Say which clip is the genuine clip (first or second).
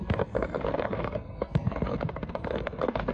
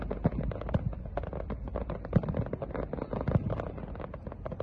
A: second